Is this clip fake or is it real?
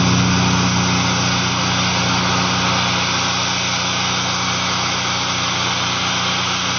real